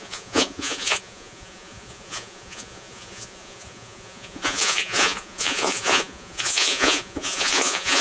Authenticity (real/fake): fake